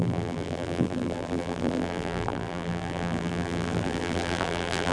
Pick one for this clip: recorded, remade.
remade